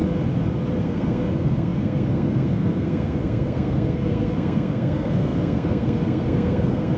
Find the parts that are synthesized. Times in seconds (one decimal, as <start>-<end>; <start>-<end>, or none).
0.8-7.0